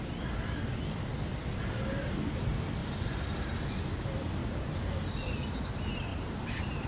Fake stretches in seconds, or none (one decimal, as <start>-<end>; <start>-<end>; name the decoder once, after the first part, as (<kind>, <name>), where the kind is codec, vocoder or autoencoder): 0.0-2.8 (vocoder, BigVGAN v2); 3.9-4.4; 5.6-6.9